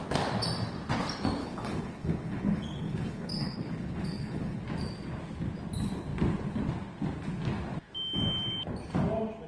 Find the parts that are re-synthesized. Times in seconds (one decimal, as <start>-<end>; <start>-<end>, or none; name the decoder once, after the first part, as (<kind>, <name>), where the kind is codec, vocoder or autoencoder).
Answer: 1.4-4.6 (codec, HILCodec)